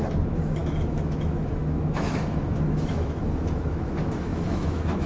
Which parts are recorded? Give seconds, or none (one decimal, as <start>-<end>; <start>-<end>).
none